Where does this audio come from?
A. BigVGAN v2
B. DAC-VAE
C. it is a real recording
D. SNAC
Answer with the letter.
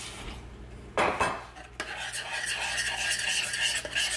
C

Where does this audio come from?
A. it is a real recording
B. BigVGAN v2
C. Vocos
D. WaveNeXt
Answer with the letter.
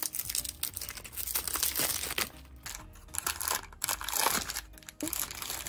A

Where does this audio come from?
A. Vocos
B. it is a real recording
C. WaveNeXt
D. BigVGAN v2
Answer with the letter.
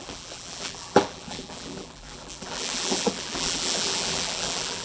D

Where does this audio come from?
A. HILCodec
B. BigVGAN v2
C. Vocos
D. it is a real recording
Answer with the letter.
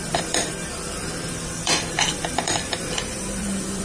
B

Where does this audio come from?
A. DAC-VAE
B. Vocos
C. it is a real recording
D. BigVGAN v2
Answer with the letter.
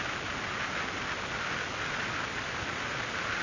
C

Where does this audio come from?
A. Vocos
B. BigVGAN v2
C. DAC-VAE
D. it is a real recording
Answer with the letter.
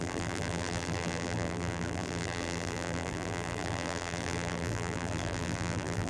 B